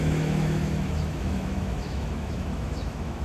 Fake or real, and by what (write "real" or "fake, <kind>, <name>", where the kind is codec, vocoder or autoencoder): fake, autoencoder, DAC-VAE